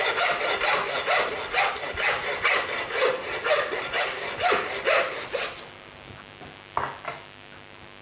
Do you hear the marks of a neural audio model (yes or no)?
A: no